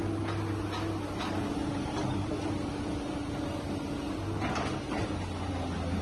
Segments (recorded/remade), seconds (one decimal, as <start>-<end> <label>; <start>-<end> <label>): 0.0-6.0 recorded